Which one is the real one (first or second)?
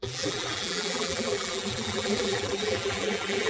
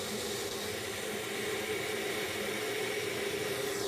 second